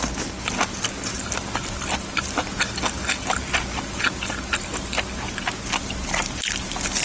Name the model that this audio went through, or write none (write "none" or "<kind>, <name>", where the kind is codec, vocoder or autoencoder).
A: none